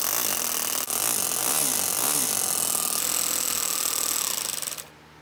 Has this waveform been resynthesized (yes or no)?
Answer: no